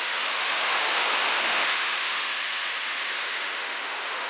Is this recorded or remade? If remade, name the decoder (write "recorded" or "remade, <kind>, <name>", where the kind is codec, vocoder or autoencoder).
remade, autoencoder, DAC-VAE